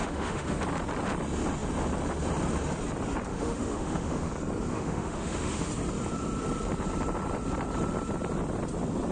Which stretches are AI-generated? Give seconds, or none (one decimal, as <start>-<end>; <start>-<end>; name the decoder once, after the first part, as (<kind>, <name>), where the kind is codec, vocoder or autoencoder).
0.0-0.6 (autoencoder, DAC-VAE); 3.3-4.3; 4.7-5.7